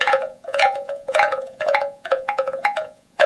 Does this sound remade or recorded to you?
remade